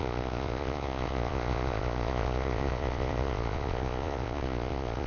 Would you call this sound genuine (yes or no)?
no